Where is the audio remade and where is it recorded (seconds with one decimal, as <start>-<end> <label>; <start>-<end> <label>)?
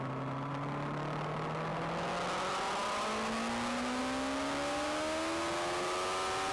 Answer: 0.0-6.5 recorded